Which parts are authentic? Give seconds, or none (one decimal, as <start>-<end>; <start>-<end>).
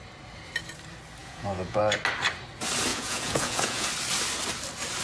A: 0.0-1.2; 1.8-2.9; 3.9-5.0